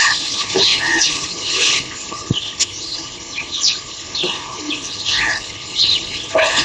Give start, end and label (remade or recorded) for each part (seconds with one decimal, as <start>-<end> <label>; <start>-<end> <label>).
0.0-6.6 remade